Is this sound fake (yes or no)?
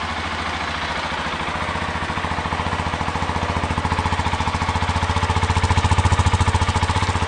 no